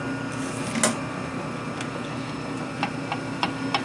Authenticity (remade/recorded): recorded